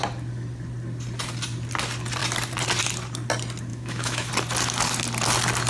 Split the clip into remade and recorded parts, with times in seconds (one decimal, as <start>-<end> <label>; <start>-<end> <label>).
0.0-3.7 recorded; 3.7-4.3 remade; 4.3-5.7 recorded